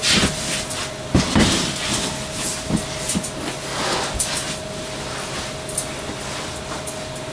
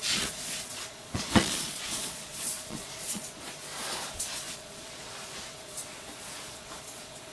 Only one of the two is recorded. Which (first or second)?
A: first